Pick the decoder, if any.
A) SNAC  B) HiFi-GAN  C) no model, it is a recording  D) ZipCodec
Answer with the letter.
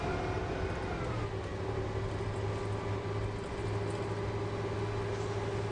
C